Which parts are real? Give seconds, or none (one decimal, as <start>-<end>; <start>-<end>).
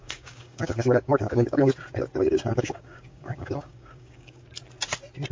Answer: 1.7-2.5; 4.4-5.3